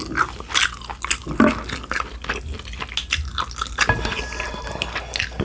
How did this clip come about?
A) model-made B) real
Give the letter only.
B